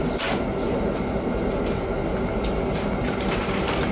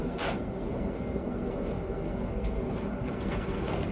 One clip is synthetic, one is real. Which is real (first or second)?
first